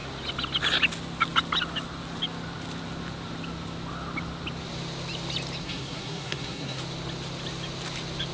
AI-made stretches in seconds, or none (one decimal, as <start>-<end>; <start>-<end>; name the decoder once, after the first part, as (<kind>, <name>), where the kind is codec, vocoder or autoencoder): 5.6-6.8 (codec, SNAC)